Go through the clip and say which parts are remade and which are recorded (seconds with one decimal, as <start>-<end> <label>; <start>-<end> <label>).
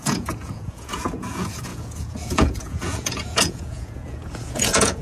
0.0-5.0 remade